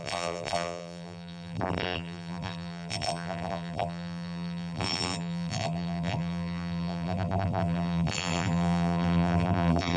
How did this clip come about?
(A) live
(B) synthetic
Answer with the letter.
B